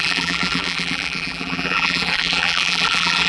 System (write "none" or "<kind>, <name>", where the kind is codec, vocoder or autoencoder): vocoder, BigVGAN v2